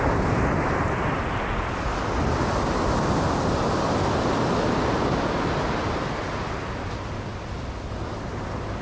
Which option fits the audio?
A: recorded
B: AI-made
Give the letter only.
A